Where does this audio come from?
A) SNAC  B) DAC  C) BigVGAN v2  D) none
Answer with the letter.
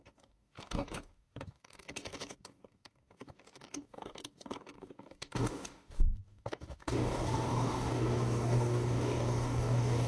B